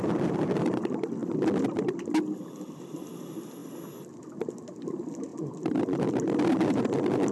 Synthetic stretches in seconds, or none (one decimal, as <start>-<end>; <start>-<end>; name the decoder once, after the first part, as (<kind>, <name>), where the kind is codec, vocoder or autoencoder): 0.0-3.6 (vocoder, BigVGAN v2); 4.2-7.3